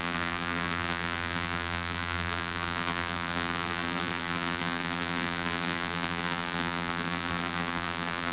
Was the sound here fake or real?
fake